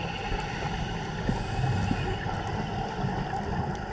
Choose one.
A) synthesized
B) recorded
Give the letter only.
B